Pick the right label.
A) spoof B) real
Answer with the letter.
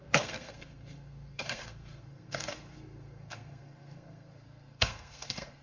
A